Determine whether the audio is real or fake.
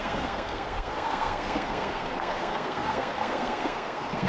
fake